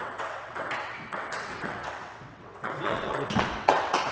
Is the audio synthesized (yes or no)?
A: yes